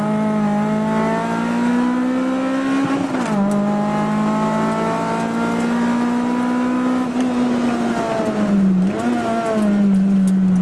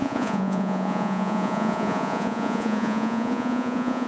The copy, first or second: second